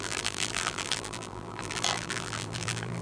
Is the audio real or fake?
fake